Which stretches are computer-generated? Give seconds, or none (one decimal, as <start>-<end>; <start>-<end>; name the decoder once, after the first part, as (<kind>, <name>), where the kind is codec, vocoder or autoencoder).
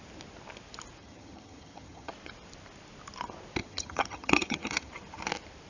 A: 1.0-2.1 (vocoder, HiFi-GAN); 3.6-4.9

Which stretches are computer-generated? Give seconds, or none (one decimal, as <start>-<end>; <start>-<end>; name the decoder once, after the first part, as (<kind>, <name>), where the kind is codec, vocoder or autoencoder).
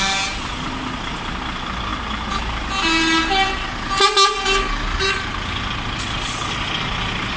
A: none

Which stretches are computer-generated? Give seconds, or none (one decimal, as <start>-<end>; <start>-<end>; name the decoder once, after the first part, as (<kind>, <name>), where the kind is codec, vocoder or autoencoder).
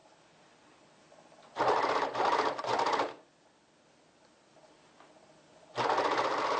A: 0.0-4.0 (vocoder, BigVGAN v2)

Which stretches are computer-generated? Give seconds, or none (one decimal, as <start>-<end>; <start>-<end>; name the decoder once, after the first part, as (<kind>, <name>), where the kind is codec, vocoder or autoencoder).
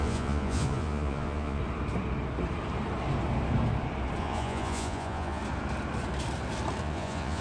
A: 0.0-1.6 (vocoder, Vocos); 4.2-5.4; 6.8-7.4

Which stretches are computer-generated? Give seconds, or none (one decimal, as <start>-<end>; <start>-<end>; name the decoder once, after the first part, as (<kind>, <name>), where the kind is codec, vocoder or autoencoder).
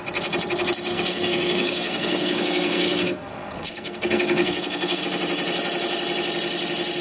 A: 0.9-5.0 (codec, SNAC)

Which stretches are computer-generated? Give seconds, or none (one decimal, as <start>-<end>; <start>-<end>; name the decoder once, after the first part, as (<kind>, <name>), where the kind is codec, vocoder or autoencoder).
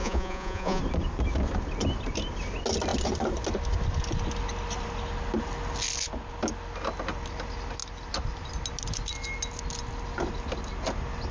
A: 0.0-0.8 (vocoder, Vocos)